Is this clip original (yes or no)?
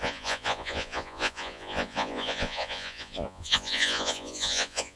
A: no